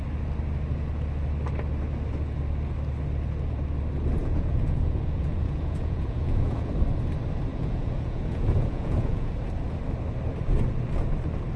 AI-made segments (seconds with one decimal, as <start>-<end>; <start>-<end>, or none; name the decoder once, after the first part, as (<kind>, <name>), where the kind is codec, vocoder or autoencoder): 4.2-6.7 (vocoder, Vocos); 7.5-9.3